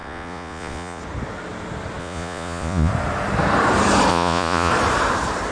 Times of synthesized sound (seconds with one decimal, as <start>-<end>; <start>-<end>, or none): 0.0-1.0; 2.0-2.9; 4.1-4.7